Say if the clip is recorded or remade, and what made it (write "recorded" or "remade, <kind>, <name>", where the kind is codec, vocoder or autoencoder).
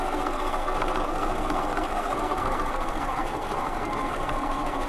remade, codec, SNAC